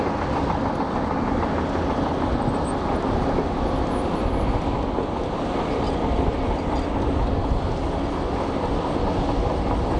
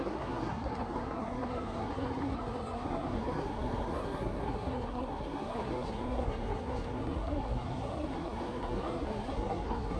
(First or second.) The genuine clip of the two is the first